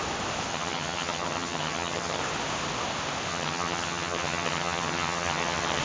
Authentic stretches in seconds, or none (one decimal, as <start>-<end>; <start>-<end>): 0.0-0.5; 2.2-3.3